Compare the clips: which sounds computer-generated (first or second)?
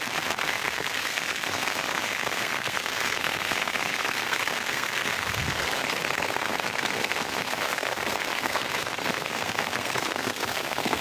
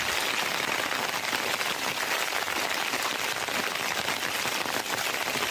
first